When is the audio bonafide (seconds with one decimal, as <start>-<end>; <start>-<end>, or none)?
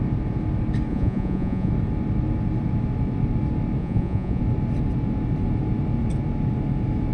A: 0.0-0.9; 1.7-3.8; 4.4-7.1